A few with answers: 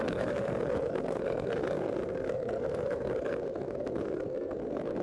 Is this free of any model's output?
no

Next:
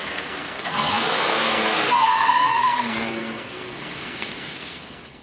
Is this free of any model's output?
no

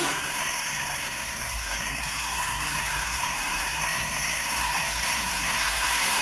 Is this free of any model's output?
no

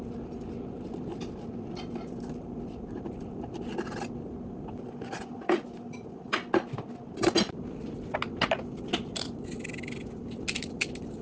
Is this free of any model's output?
yes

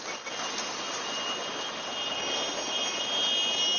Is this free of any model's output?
yes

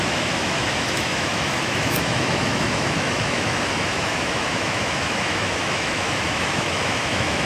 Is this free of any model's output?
no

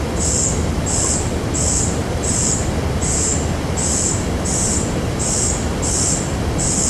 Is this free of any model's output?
yes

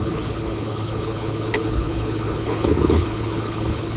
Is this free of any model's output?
no